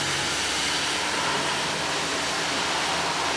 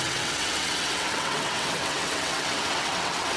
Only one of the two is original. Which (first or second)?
first